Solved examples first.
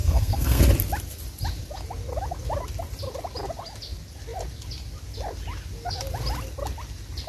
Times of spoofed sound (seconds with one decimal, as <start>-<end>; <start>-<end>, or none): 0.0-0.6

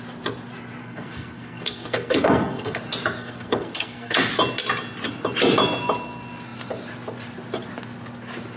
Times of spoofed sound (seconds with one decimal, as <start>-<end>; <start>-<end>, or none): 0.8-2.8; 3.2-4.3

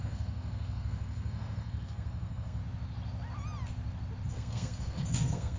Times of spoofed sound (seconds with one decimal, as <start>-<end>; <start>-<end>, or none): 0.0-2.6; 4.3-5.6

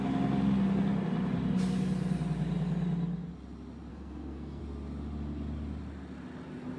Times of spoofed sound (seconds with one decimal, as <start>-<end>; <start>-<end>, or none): 3.9-4.6

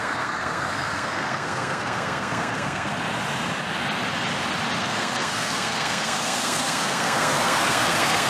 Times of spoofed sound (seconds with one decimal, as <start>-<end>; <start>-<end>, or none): 0.0-2.9; 4.8-8.3